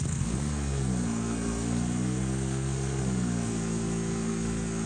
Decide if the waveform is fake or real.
fake